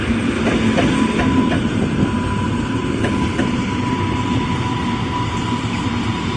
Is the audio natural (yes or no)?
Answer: yes